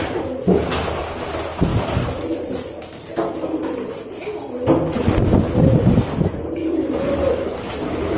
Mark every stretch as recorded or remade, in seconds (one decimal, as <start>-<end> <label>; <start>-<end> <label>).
0.0-6.6 recorded; 6.6-7.7 remade; 7.7-8.2 recorded